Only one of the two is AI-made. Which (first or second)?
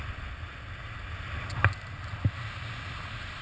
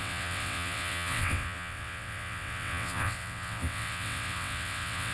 second